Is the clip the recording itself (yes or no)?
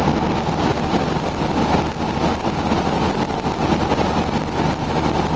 yes